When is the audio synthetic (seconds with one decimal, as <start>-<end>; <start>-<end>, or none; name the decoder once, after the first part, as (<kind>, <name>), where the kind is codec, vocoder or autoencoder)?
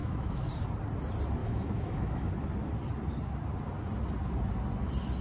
0.0-0.5 (autoencoder, DAC-VAE); 1.4-2.3